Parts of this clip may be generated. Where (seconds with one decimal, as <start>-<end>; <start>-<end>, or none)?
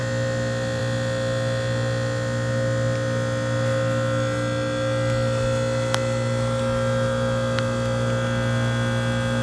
none